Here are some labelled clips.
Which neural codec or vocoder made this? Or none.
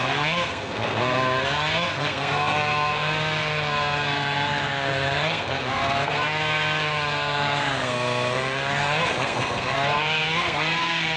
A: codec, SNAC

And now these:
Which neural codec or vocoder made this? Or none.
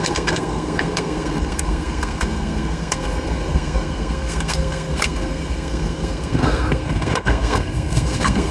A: codec, SNAC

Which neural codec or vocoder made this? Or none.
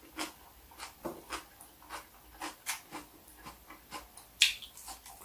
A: none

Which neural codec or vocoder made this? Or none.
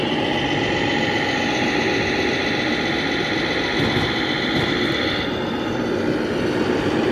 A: none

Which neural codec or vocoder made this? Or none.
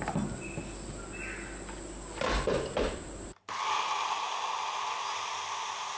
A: none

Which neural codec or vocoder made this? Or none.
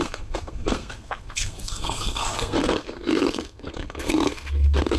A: codec, SNAC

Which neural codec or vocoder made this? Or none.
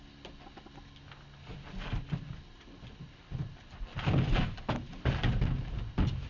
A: none